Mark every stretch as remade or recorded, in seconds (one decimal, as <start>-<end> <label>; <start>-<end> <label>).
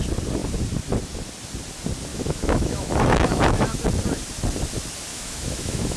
0.0-2.1 recorded; 2.1-3.8 remade; 3.8-5.1 recorded; 5.1-6.0 remade